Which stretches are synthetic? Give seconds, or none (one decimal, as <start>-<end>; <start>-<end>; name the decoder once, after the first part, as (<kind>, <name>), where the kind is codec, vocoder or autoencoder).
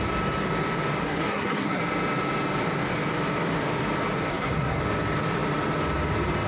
1.0-1.8 (codec, SNAC); 4.3-4.8